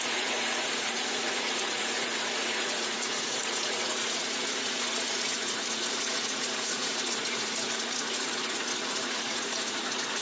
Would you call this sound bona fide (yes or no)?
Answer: no